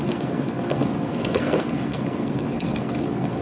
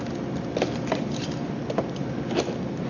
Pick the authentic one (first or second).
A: second